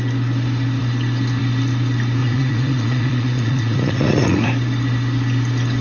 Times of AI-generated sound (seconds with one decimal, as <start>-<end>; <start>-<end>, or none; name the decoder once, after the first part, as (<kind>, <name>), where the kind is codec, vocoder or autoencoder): 2.2-4.5 (vocoder, Vocos)